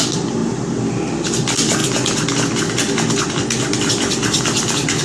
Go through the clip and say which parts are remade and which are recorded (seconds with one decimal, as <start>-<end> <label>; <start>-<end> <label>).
0.0-1.8 remade; 1.8-3.9 recorded; 3.9-5.0 remade